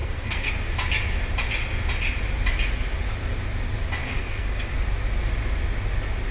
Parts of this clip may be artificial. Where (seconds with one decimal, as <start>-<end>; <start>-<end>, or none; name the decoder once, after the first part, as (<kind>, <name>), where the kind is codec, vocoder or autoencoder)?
0.0-0.5 (codec, SNAC); 4.0-4.7